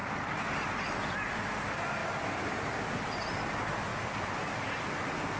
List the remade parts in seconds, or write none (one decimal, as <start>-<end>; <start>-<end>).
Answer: 0.0-1.0; 3.9-4.8